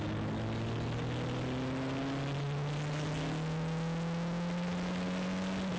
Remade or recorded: recorded